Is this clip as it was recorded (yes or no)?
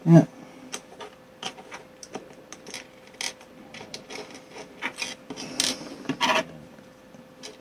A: yes